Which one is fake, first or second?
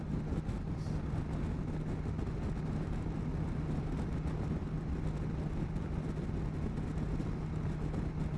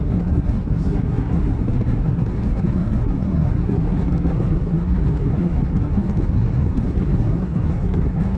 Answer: second